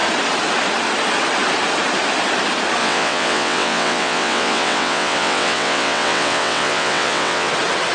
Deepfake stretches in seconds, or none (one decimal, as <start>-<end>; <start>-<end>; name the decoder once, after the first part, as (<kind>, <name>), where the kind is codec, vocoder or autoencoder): 2.8-7.5 (vocoder, WaveNeXt)